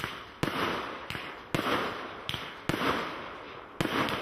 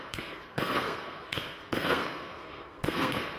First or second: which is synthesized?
second